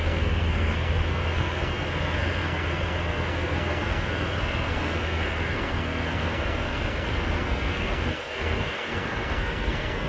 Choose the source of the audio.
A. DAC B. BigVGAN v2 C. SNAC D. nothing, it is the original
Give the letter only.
C